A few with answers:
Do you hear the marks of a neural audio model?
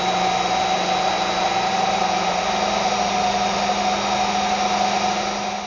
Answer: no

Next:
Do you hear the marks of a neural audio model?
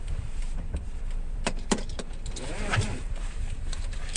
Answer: yes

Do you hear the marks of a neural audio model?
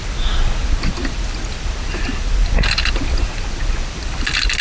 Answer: no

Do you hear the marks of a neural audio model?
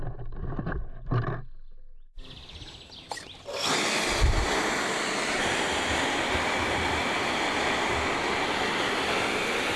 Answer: no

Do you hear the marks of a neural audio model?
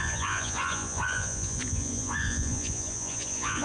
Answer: yes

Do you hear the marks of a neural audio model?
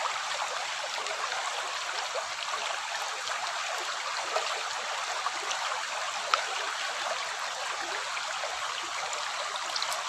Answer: no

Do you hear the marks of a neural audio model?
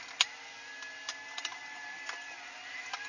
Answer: no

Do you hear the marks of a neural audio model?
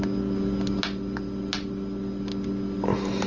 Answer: no